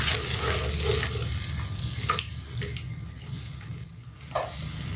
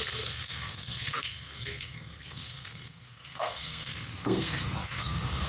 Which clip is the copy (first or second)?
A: second